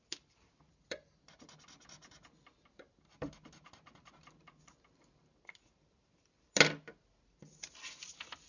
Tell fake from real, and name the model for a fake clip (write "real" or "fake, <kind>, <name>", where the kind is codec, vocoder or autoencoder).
real